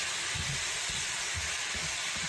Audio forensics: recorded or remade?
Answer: recorded